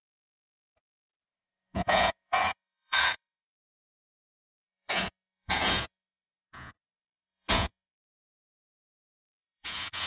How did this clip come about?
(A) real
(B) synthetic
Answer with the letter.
B